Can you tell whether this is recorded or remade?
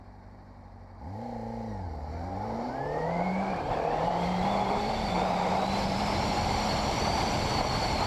remade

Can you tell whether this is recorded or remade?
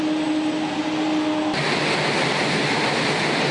recorded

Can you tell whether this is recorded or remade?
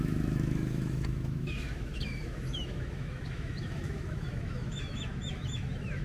remade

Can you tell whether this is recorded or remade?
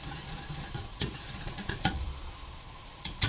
remade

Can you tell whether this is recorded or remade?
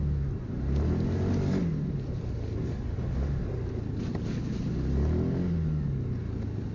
recorded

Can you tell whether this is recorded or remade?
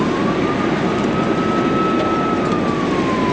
recorded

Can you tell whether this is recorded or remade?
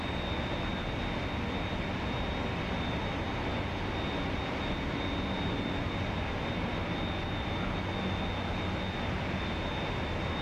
recorded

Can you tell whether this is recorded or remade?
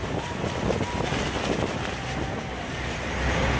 recorded